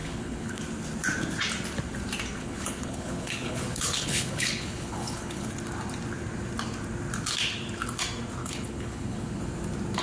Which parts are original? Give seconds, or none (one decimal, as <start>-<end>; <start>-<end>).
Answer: 0.6-2.4; 5.5-8.4; 9.4-10.0